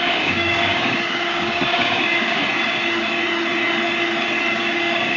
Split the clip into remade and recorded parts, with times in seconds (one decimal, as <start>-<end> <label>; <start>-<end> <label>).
0.0-2.4 remade; 2.4-4.5 recorded; 4.5-5.2 remade